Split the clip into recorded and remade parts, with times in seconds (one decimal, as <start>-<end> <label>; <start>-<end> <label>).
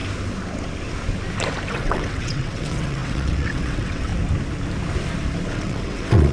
0.0-1.7 recorded; 1.7-4.1 remade; 4.1-5.5 recorded; 5.5-6.3 remade